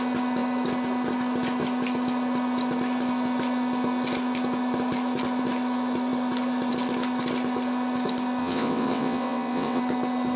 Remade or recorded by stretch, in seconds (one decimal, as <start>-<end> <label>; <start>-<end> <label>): 0.0-8.4 recorded; 8.4-9.8 remade; 9.8-10.4 recorded